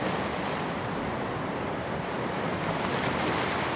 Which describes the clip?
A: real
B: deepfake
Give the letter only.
A